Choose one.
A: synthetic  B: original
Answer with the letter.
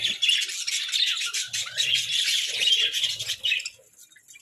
B